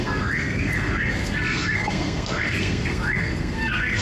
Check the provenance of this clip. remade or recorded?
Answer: remade